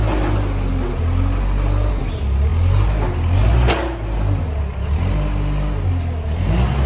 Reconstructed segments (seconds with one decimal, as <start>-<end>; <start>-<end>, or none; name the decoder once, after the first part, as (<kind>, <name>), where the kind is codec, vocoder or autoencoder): none